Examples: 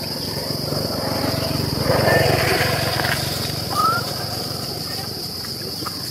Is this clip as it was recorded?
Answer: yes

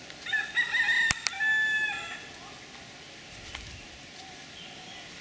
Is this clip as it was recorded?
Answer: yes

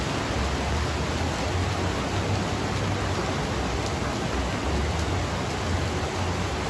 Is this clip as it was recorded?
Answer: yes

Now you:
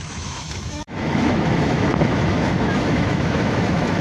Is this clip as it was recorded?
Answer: no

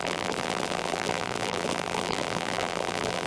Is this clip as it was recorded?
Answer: no